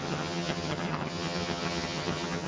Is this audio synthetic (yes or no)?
yes